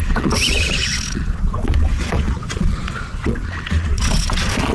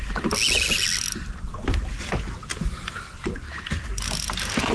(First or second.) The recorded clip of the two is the second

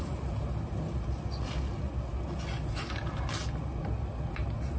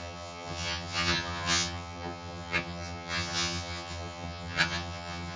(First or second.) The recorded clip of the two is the first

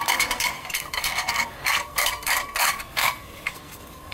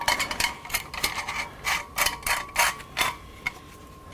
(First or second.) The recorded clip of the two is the second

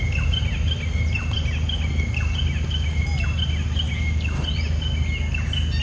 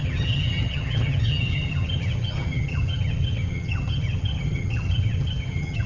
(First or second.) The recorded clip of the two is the first